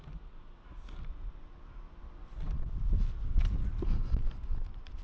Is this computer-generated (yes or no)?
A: no